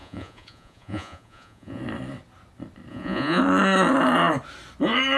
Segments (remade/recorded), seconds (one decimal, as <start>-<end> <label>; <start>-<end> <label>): 0.0-1.8 remade; 1.8-2.9 recorded; 2.9-3.4 remade; 3.4-5.2 recorded